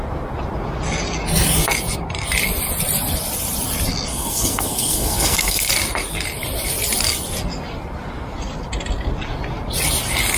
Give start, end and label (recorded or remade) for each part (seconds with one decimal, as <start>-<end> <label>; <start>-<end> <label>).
0.0-4.1 recorded; 4.1-5.7 remade; 5.7-10.4 recorded